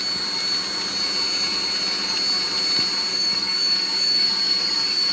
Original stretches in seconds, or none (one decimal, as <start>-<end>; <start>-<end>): 0.0-3.1